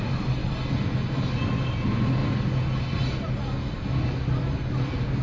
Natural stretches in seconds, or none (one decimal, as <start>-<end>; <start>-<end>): 0.0-5.2